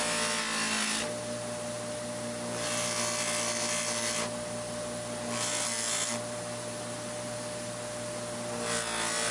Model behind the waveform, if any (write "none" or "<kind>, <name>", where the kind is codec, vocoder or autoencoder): none